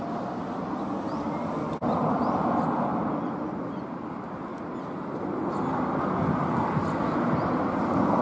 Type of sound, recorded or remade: recorded